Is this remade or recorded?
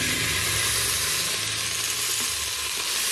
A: recorded